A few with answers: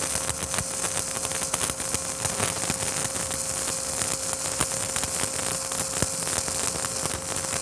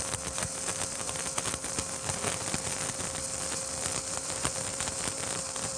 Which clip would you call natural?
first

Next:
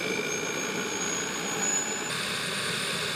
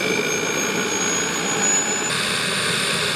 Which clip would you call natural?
second